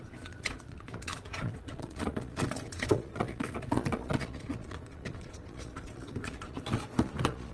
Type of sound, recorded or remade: remade